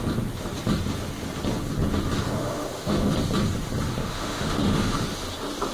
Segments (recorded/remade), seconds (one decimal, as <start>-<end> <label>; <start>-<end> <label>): 0.0-2.4 recorded; 2.4-3.1 remade; 3.1-4.0 recorded; 4.0-5.0 remade; 5.0-5.7 recorded